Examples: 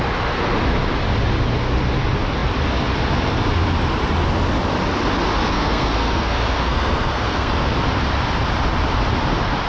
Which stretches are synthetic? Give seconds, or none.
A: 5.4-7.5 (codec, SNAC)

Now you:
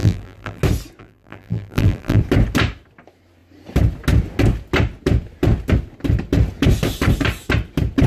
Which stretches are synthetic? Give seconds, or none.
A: 0.0-0.6 (vocoder, BigVGAN v2); 1.0-2.2